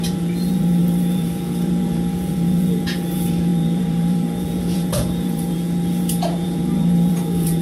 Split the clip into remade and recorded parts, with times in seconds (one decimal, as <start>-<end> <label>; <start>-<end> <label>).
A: 0.0-7.6 remade